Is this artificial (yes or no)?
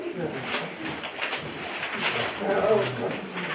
no